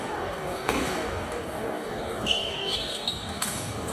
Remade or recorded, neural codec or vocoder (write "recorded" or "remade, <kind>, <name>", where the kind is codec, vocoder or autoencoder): remade, codec, DAC